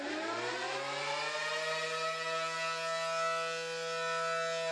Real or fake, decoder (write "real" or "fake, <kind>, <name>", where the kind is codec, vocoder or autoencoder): real